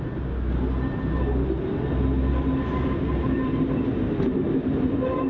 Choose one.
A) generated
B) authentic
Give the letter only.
B